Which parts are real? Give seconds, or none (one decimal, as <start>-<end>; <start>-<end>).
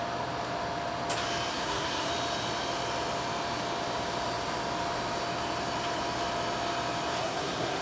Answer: 0.0-1.5; 2.1-7.2